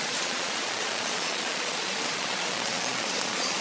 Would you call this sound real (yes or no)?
no